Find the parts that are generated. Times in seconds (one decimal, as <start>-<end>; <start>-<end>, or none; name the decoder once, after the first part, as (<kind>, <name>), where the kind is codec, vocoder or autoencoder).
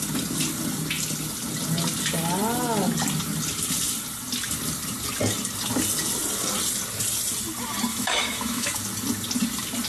7.9-8.7 (autoencoder, DAC-VAE)